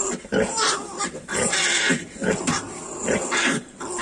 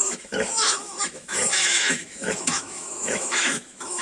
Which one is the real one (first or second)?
first